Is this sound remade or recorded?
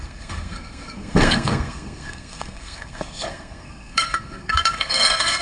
remade